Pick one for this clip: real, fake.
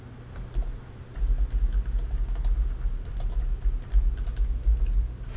real